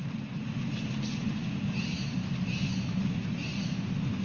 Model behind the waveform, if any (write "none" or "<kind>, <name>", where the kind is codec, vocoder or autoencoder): none